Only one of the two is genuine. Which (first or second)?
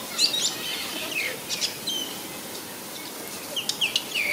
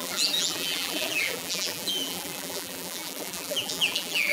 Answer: first